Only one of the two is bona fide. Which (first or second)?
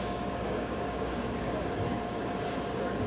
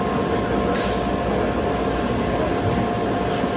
second